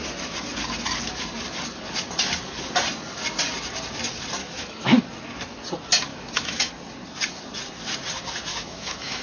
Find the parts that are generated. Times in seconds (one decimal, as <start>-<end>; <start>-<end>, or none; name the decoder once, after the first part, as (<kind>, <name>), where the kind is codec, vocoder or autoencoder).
4.4-5.0 (autoencoder, DAC-VAE); 6.1-6.7; 8.5-9.2